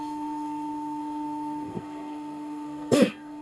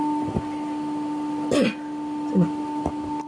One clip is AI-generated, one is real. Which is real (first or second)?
second